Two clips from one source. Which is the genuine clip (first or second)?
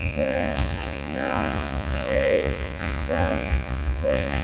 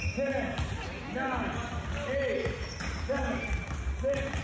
second